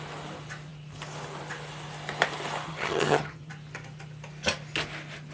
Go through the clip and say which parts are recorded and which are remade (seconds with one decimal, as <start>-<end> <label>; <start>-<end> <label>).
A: 0.0-2.7 recorded; 2.7-3.5 remade; 3.5-5.3 recorded